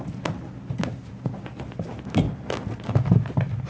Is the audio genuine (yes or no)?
yes